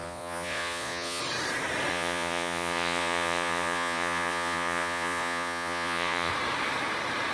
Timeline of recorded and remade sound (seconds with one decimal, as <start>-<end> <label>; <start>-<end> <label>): 0.0-1.2 remade; 1.2-1.9 recorded; 1.9-6.3 remade; 6.3-7.3 recorded